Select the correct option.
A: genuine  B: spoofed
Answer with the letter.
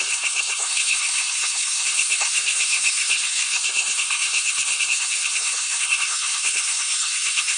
B